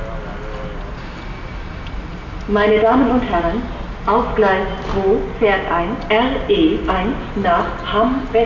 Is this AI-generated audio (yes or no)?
no